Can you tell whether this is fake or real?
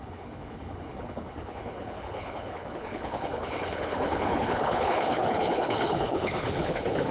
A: fake